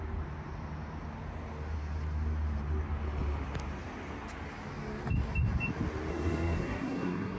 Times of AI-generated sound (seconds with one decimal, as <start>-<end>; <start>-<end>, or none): 6.1-7.4